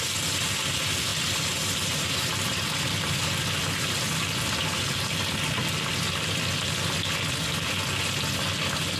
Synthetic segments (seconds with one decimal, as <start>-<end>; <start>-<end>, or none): 1.1-2.3